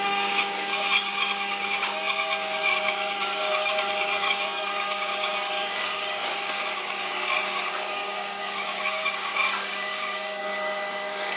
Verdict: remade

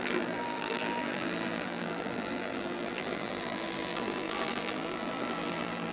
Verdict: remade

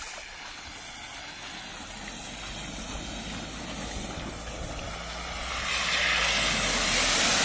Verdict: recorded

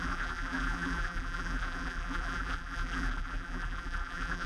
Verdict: remade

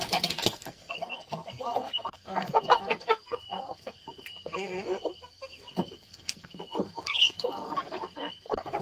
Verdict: remade